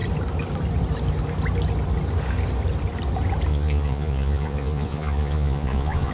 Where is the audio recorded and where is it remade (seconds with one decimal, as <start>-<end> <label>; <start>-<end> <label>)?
0.0-3.5 recorded; 3.5-6.1 remade